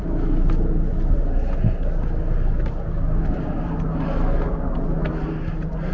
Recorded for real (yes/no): yes